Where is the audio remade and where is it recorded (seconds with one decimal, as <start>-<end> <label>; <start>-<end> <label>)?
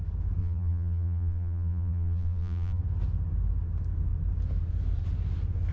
0.0-0.4 recorded; 0.4-2.8 remade; 2.8-5.7 recorded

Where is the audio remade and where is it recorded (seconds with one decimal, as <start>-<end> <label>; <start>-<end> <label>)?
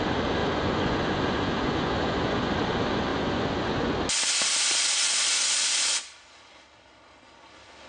0.0-0.4 recorded; 0.4-2.5 remade; 2.5-3.1 recorded; 3.1-4.0 remade; 4.0-7.9 recorded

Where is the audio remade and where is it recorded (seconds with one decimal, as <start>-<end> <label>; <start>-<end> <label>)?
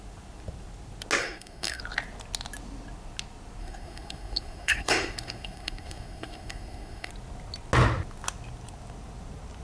0.0-1.2 recorded; 1.2-1.8 remade; 1.8-3.6 recorded; 3.6-7.1 remade; 7.1-9.6 recorded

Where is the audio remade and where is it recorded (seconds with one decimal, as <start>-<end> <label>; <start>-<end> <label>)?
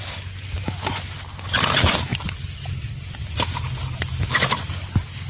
0.0-5.3 recorded